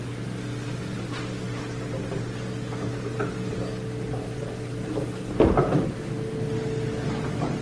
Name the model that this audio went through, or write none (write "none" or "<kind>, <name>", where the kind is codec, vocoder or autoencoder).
none